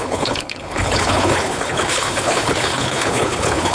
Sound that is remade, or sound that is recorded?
remade